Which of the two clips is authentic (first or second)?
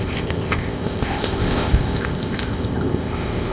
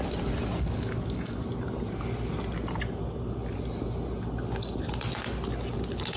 second